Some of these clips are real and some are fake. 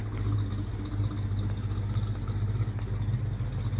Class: real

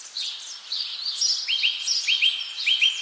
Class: real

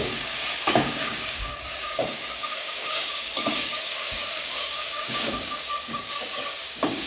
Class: fake